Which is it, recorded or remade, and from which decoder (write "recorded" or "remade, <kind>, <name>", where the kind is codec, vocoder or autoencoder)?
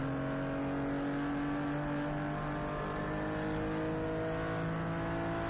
recorded